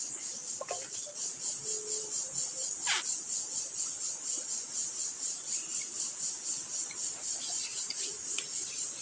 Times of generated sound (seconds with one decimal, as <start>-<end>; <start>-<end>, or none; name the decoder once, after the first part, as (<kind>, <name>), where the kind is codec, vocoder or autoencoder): none